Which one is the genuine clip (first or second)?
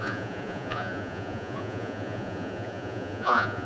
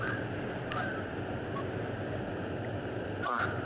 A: second